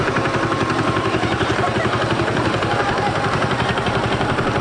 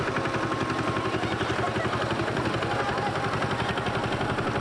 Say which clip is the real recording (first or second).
second